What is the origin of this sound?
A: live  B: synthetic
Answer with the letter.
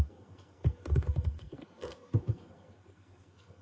B